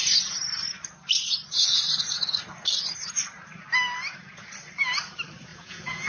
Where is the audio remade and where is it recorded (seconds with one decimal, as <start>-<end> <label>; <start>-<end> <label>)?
0.0-5.5 recorded; 5.5-6.1 remade